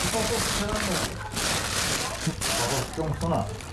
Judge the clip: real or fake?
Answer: real